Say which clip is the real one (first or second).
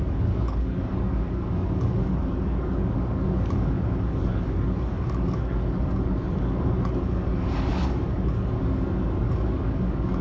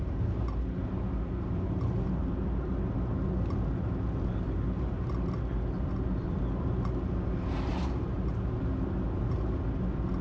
second